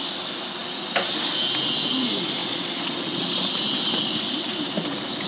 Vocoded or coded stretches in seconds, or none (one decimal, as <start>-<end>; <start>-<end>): 2.4-3.5

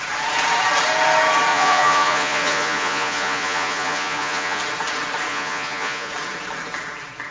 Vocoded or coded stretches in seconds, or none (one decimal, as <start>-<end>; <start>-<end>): 1.5-4.6; 5.3-6.1

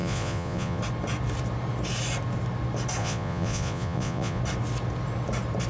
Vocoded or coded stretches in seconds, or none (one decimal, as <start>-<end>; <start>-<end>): 0.0-0.8; 3.0-4.4

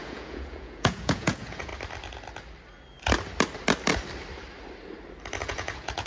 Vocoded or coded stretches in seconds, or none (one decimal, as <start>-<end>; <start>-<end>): 0.0-1.7; 5.4-6.1

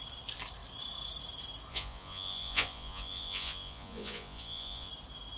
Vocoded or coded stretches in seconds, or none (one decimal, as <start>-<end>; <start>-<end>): 1.7-4.9